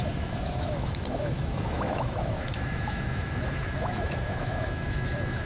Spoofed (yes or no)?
yes